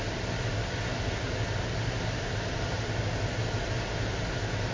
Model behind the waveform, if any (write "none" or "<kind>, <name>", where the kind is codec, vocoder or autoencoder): none